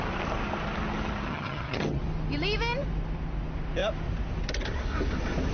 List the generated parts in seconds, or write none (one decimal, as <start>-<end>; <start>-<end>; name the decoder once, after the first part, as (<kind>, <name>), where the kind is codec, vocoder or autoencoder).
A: 1.3-2.0 (vocoder, HiFi-GAN)